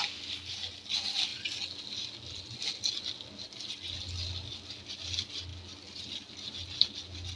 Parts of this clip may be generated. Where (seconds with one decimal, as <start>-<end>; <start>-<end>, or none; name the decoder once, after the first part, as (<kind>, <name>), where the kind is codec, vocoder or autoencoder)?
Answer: none